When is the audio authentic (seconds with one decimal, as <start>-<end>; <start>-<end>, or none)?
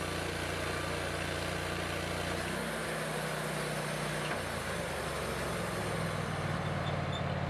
0.0-7.5